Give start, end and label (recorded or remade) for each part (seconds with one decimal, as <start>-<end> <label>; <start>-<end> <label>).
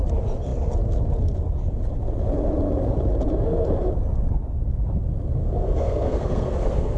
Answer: 0.0-5.4 recorded; 5.4-7.0 remade